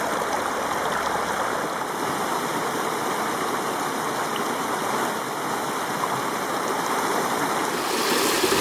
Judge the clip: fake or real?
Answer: real